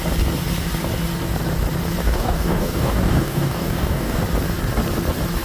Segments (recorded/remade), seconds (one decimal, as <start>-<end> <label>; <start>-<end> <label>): 0.0-2.0 recorded; 2.0-4.2 remade; 4.2-5.4 recorded